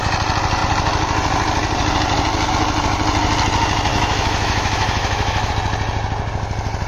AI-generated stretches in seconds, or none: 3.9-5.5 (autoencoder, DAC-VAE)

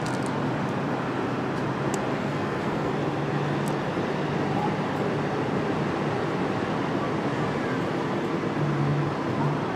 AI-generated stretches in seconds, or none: 2.1-2.9 (codec, SNAC)

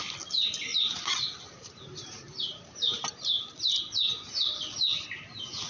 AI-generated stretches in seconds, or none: 0.7-3.2 (vocoder, BigVGAN v2)